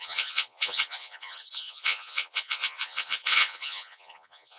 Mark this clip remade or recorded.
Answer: remade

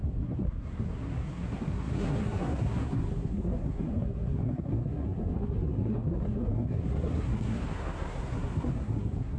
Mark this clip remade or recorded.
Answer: remade